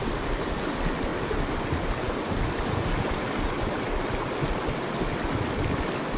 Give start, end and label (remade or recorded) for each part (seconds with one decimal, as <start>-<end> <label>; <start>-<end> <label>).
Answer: 0.0-6.2 recorded